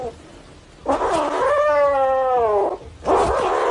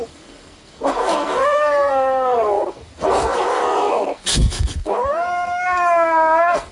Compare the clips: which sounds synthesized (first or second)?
second